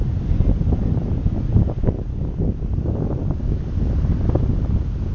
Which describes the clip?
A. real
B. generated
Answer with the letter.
A